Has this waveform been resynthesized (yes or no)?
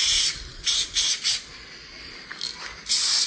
no